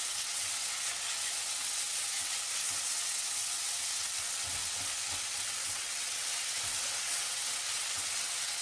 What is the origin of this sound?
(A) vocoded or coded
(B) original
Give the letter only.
A